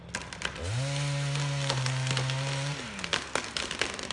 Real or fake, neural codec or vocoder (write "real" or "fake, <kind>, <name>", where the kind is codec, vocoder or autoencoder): real